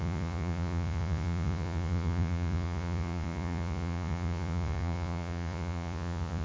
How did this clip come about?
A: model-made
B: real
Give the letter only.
A